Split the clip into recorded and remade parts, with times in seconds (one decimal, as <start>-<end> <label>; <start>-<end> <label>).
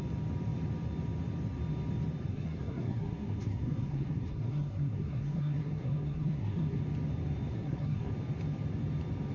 0.0-2.3 recorded; 2.3-6.8 remade; 6.8-7.5 recorded; 7.5-8.1 remade; 8.1-9.3 recorded